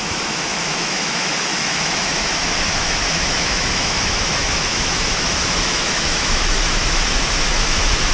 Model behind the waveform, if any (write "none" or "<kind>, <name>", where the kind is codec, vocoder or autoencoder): autoencoder, DAC-VAE